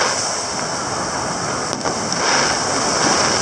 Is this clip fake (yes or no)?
no